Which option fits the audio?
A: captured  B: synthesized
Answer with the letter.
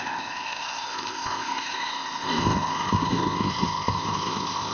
B